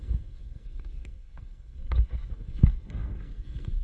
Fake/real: fake